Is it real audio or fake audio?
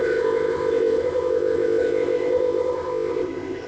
fake